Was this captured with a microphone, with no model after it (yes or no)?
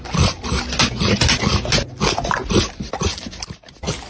yes